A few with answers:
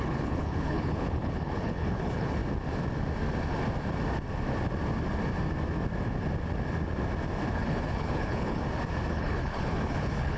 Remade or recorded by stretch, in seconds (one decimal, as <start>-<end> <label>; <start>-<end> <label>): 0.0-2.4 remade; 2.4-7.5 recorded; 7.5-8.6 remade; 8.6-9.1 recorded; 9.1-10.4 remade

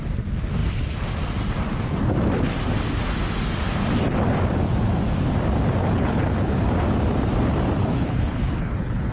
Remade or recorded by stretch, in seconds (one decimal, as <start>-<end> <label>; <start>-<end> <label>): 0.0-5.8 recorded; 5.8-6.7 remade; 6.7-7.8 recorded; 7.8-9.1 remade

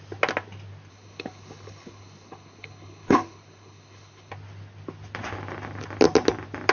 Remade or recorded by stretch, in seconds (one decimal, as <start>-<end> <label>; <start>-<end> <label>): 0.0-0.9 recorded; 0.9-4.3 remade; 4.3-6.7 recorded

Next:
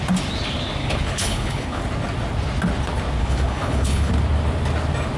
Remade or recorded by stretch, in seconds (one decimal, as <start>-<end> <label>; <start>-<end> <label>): 0.0-0.8 recorded; 0.8-1.8 remade; 1.8-3.2 recorded; 3.2-4.1 remade; 4.1-5.2 recorded

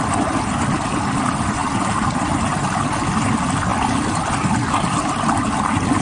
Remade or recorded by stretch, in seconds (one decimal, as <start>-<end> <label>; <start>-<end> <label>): 0.0-6.0 recorded

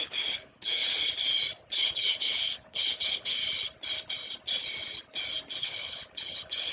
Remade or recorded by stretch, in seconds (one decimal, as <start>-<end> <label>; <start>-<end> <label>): 0.0-0.8 remade; 0.8-1.8 recorded; 1.8-3.4 remade; 3.4-5.6 recorded; 5.6-6.7 remade

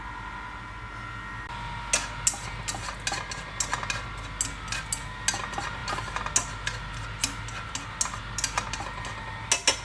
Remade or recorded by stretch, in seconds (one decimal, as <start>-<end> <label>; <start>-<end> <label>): 0.0-9.8 recorded

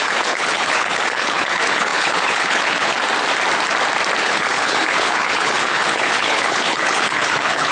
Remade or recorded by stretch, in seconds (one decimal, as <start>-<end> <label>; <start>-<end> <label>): 0.0-3.0 remade; 3.0-4.2 recorded; 4.2-7.7 remade